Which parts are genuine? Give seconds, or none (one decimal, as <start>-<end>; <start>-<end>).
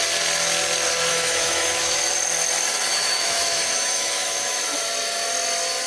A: 0.0-1.1; 2.0-2.9; 4.6-5.9